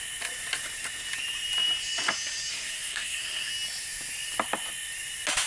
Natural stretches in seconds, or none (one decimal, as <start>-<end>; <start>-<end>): 0.0-2.5; 3.5-5.5